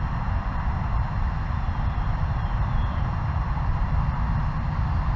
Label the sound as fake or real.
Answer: fake